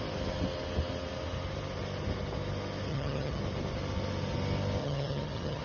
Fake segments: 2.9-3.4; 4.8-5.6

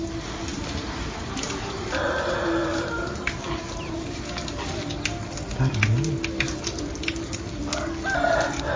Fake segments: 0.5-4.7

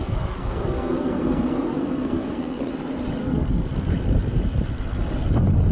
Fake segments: 0.0-2.7; 3.2-3.7

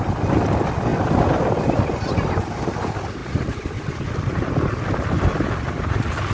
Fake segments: none

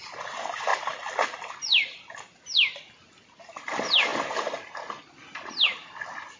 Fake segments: none

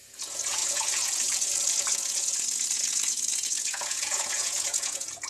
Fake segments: 0.0-5.3

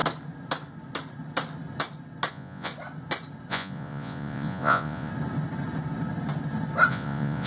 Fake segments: 2.3-2.7; 3.5-5.1; 6.9-7.5

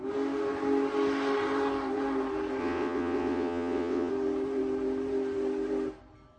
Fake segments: 2.6-4.1